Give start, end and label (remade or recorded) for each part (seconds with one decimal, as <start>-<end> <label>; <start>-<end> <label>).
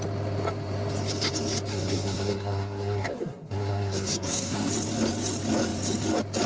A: 0.0-1.7 recorded; 1.7-4.7 remade; 4.7-6.5 recorded